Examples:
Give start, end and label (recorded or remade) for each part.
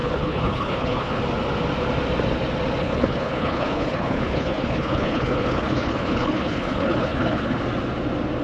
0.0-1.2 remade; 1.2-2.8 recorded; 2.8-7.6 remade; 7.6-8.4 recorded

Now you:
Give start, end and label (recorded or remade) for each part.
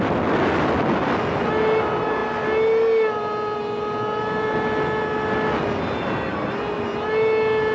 0.0-7.7 recorded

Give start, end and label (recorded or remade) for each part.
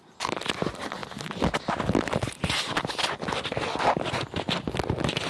0.0-5.3 recorded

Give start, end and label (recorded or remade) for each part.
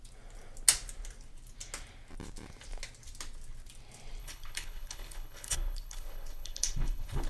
0.0-4.2 recorded; 4.2-7.3 remade